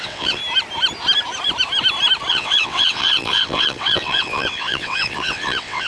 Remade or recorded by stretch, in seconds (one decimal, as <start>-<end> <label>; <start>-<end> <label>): 0.0-0.4 remade; 0.4-2.3 recorded; 2.3-5.9 remade